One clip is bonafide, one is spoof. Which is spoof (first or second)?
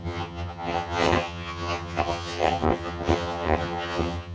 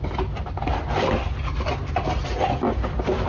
first